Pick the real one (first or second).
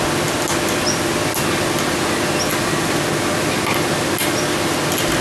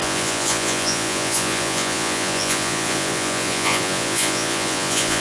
first